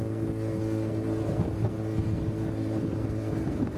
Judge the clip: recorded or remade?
remade